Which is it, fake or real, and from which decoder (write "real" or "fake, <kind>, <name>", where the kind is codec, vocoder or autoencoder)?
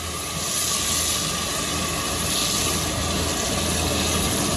real